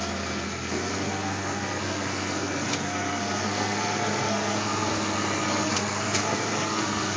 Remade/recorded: remade